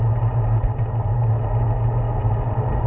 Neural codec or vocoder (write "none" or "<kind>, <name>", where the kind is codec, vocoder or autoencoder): none